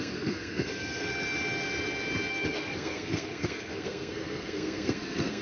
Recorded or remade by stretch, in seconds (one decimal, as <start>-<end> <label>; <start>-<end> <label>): 0.0-1.1 remade; 1.1-2.3 recorded; 2.3-5.4 remade